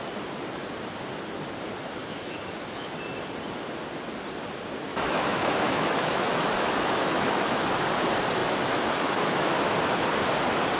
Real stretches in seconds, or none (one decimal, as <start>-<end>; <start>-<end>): 0.0-2.0; 2.9-4.9; 7.4-8.4; 9.5-10.8